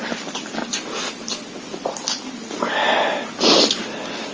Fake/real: real